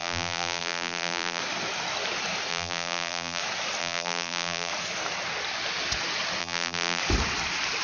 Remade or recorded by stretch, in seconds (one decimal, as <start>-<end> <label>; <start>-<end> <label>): 0.0-1.4 remade; 1.4-2.5 recorded; 2.5-3.4 remade; 3.4-3.8 recorded; 3.8-4.7 remade; 4.7-6.4 recorded; 6.4-7.0 remade; 7.0-7.8 recorded